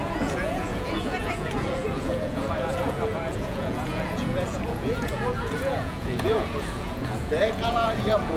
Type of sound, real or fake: fake